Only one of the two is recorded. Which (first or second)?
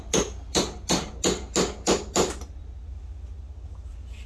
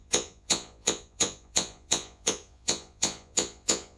first